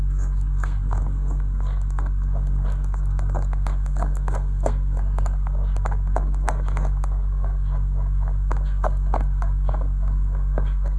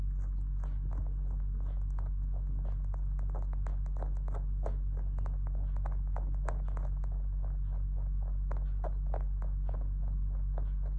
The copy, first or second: first